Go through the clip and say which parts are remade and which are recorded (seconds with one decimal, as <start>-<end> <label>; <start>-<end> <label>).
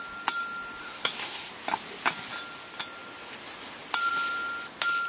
0.0-0.8 recorded; 0.8-1.5 remade; 1.5-5.1 recorded